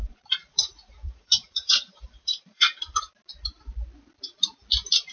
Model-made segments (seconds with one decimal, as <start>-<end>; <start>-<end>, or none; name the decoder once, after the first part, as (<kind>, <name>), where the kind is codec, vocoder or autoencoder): 0.0-3.1 (vocoder, Vocos)